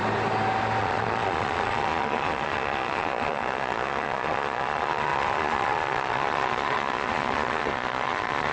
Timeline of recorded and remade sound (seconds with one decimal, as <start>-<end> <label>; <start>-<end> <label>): 0.0-0.8 recorded; 0.8-8.5 remade

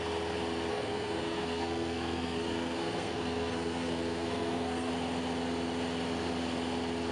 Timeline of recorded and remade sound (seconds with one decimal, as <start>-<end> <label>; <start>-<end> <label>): 0.0-0.7 recorded; 0.7-4.9 remade; 4.9-7.1 recorded

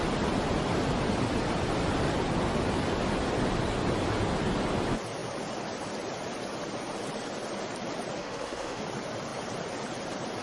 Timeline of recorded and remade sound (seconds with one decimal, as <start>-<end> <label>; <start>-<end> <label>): 0.0-8.2 recorded; 8.2-8.8 remade; 8.8-10.4 recorded

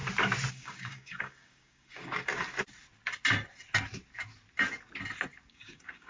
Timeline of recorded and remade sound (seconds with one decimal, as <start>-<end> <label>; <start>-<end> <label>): 0.0-0.5 recorded; 0.5-2.3 remade; 2.3-5.5 recorded; 5.5-6.1 remade